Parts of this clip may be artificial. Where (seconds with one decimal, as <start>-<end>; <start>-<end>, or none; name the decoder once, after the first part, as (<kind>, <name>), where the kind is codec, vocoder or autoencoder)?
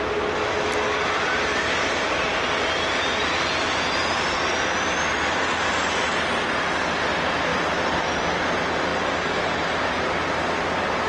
none